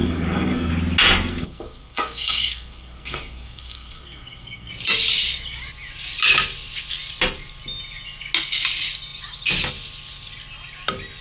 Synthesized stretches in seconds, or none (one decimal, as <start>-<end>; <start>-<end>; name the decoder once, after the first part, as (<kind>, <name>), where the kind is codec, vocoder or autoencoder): 0.0-0.7 (codec, SNAC); 1.3-4.7